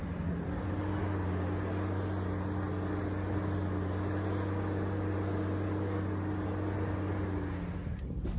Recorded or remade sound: recorded